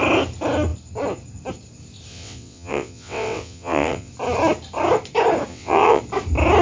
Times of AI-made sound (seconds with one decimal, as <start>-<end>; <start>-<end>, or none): 2.1-4.1; 5.5-6.0